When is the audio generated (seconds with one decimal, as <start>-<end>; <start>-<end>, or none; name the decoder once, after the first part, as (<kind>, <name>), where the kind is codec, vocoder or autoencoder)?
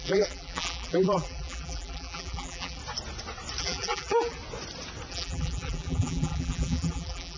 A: 0.0-2.8 (vocoder, BigVGAN v2); 3.6-4.4; 5.1-7.4